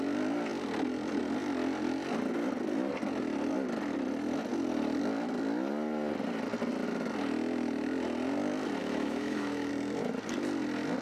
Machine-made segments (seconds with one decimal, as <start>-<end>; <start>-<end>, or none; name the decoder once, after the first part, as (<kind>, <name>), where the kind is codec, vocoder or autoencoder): 8.8-9.7 (autoencoder, DAC-VAE)